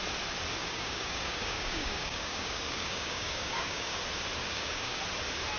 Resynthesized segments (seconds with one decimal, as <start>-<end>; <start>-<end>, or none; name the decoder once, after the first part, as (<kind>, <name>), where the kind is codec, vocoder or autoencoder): 0.6-4.0 (codec, DAC); 4.4-5.0